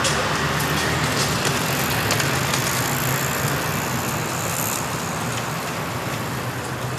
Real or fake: real